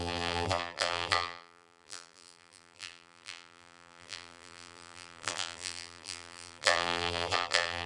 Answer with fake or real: fake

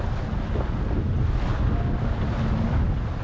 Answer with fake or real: real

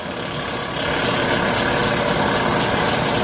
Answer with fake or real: real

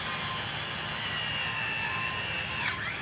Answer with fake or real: real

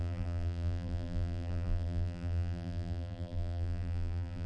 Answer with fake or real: fake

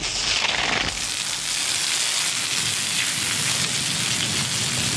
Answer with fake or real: real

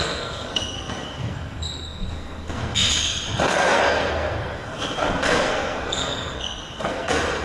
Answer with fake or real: fake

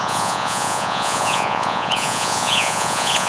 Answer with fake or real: fake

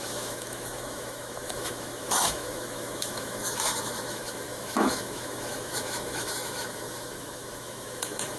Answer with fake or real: fake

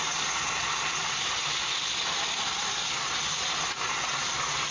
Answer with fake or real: real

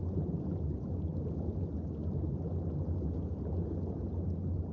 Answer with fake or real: real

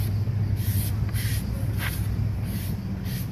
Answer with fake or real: real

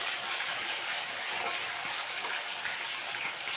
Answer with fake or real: fake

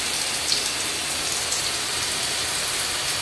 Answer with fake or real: real